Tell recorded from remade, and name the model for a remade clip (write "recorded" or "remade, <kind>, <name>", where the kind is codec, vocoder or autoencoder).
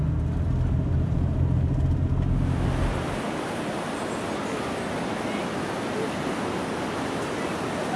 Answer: recorded